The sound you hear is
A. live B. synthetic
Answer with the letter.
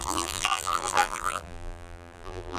B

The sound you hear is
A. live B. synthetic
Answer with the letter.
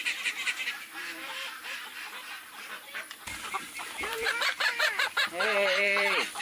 B